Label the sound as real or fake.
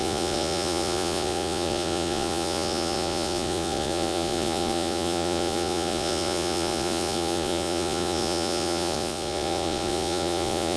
fake